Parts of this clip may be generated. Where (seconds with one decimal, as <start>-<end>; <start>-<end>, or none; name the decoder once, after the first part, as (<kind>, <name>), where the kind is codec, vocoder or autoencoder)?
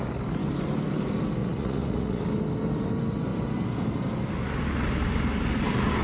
1.4-2.2 (vocoder, Vocos)